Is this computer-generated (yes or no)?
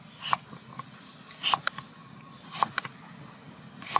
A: no